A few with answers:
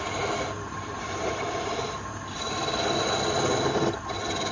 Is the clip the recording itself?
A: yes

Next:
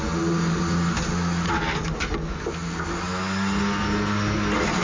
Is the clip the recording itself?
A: yes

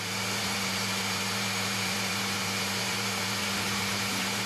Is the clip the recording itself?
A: no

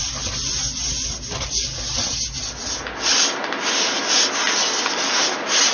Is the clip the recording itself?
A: yes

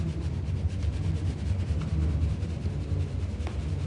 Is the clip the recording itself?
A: yes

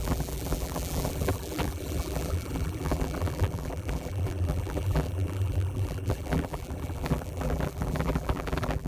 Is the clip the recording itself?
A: no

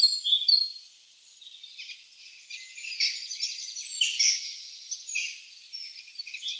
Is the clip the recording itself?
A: yes